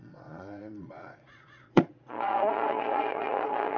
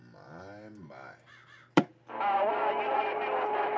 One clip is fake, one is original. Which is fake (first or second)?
first